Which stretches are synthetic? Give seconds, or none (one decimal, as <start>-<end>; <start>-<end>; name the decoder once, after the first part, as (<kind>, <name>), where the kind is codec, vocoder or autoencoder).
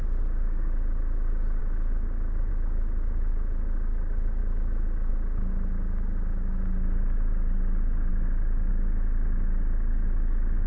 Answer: none